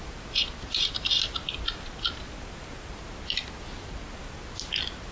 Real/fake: real